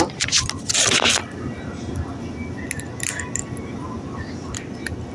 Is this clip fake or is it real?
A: real